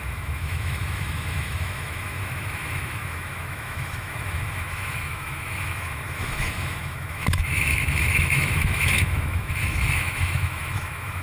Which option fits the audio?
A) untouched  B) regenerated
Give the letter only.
B